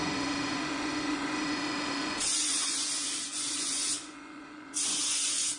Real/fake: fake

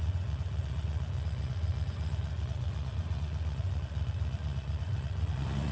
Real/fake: fake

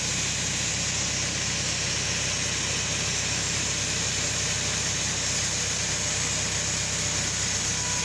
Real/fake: real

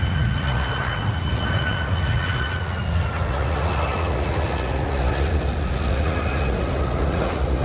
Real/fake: fake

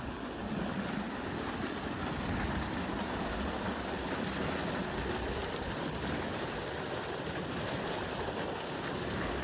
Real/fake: real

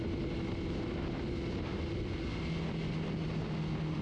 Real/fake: real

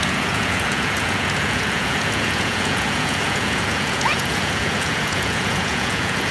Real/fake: fake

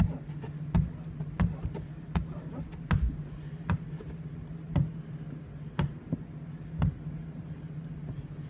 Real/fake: real